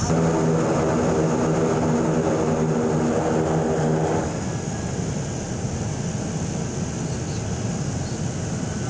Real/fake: real